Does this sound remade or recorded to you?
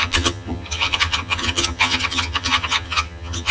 remade